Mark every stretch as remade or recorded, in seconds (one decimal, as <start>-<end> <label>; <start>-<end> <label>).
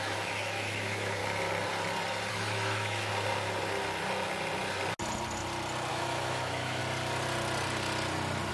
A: 0.0-1.2 remade; 1.2-2.3 recorded; 2.3-3.1 remade; 3.1-5.9 recorded; 5.9-6.8 remade; 6.8-8.5 recorded